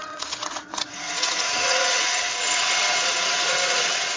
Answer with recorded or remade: remade